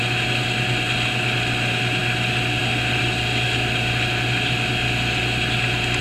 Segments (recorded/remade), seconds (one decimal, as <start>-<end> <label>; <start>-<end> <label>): 0.0-6.0 recorded